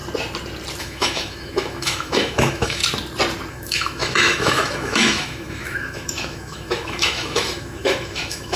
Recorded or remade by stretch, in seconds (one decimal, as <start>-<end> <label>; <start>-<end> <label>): 0.0-0.8 recorded; 0.8-2.8 remade; 2.8-3.5 recorded; 3.5-8.6 remade